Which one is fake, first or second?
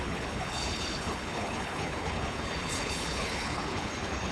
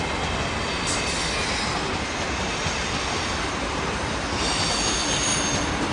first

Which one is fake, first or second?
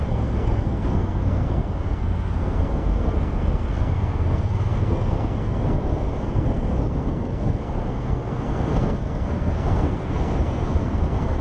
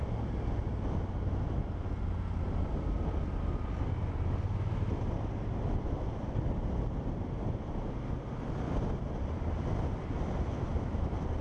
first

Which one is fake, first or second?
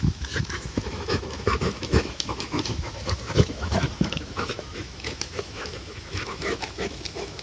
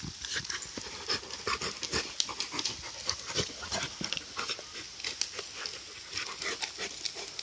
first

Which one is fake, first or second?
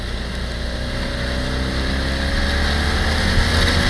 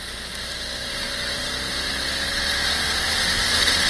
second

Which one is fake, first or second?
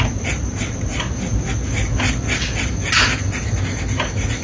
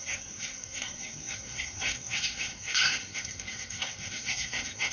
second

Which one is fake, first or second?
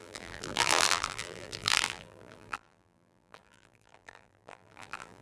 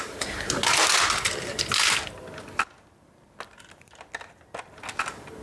first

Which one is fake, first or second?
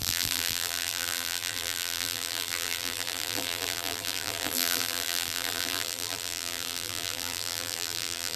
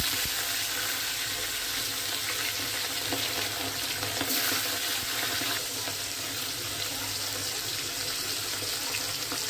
first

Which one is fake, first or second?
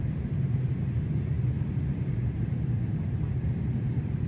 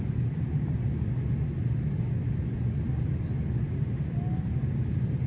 first